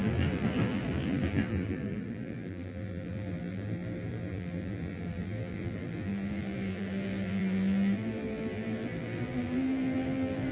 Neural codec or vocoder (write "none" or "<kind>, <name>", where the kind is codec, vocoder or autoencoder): vocoder, BigVGAN v2